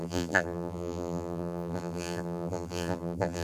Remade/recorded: remade